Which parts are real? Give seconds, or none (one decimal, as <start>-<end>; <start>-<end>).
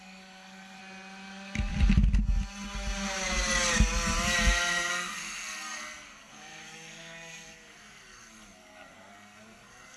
0.8-4.9